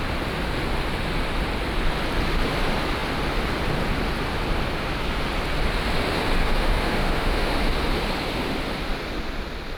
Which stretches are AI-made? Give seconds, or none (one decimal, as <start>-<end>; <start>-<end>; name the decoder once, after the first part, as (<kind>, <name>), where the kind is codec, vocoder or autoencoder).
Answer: 6.4-7.5 (autoencoder, DAC-VAE)